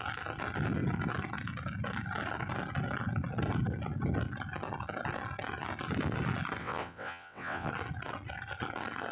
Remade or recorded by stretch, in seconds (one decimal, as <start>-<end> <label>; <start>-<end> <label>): 0.0-6.6 recorded; 6.6-7.7 remade; 7.7-9.1 recorded